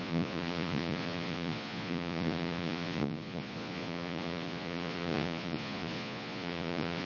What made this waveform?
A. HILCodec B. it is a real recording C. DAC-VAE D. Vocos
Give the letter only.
D